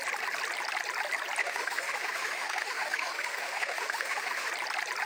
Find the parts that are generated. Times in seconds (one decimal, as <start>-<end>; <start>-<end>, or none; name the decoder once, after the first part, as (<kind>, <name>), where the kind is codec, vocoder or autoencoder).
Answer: 1.4-4.5 (autoencoder, DAC-VAE)